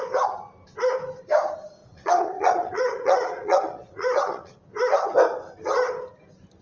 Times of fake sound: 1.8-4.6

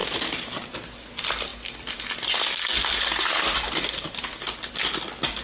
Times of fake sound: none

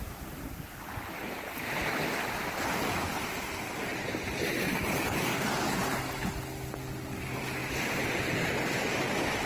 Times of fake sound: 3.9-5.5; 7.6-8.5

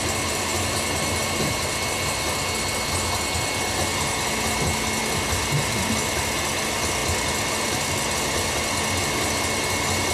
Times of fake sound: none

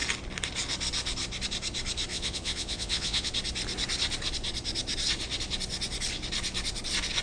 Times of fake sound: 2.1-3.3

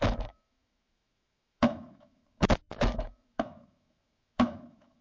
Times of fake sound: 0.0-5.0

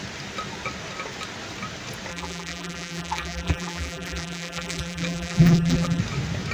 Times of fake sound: 2.1-6.0